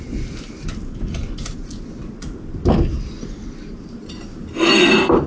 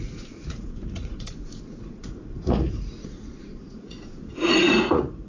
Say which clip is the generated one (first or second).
second